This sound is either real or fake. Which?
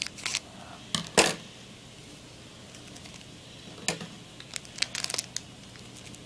real